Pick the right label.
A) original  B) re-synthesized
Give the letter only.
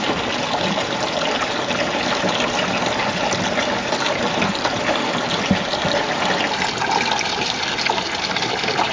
A